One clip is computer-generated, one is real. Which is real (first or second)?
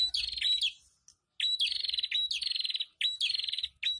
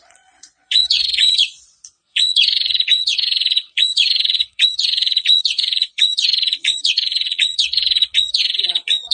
first